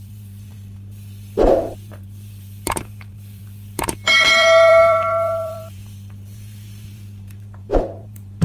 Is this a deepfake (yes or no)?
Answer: yes